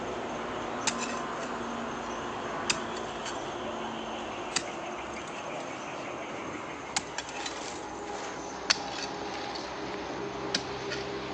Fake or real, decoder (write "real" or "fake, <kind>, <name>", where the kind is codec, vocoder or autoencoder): real